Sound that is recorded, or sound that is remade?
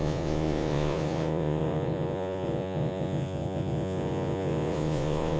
remade